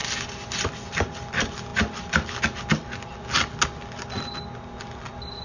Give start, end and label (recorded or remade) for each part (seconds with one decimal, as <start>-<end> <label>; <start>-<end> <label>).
0.0-0.9 recorded; 0.9-1.7 remade; 1.7-4.8 recorded; 4.8-5.4 remade